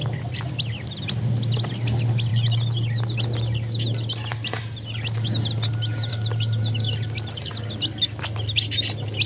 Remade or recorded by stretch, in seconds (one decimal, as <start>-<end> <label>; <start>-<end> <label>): 0.0-9.3 recorded